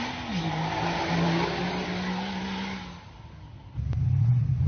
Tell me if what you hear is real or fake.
real